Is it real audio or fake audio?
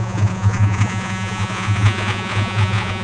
fake